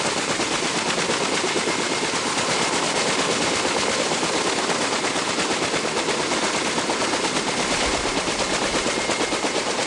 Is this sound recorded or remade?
recorded